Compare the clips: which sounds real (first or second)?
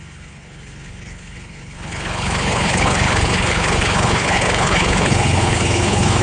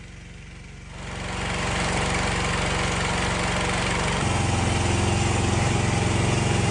second